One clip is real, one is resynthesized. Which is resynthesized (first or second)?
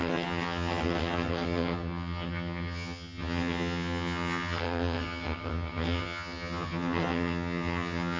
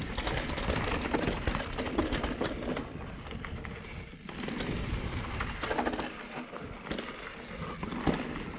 first